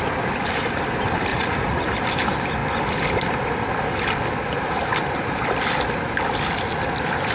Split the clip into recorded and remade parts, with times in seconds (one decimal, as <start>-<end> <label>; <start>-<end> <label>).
0.0-1.3 recorded; 1.3-1.9 remade; 1.9-7.3 recorded